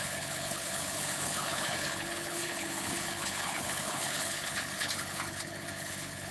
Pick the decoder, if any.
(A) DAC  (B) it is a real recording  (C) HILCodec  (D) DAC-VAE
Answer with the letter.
C